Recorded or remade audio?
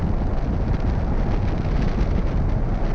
recorded